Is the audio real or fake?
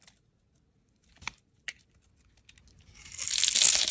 real